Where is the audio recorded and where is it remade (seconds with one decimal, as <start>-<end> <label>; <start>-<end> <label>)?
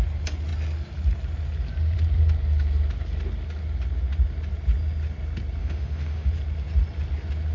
0.0-5.6 recorded; 5.6-6.3 remade; 6.3-7.5 recorded